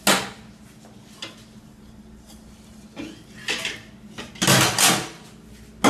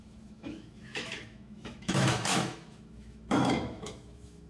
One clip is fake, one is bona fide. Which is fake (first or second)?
second